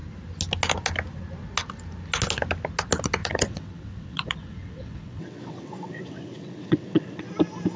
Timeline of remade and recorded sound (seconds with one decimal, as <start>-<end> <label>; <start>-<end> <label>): 0.0-3.2 recorded; 3.2-7.3 remade; 7.3-7.8 recorded